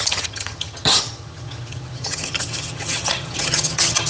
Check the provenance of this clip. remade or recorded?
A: remade